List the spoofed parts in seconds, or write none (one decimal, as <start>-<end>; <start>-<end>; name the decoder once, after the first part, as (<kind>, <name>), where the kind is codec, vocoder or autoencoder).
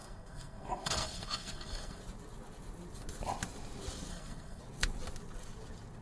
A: 0.0-2.0 (codec, SNAC); 4.1-4.6